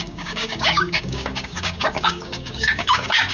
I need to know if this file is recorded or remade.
remade